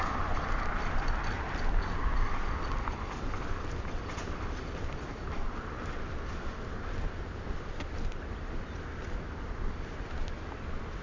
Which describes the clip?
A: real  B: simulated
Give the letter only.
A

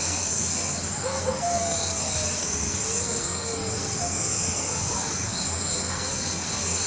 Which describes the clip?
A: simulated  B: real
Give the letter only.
A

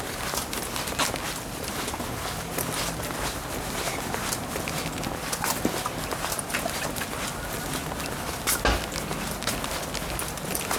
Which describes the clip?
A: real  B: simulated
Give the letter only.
A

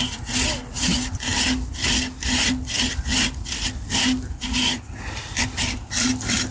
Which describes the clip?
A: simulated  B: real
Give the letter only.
B